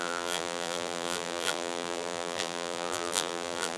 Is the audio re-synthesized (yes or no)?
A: yes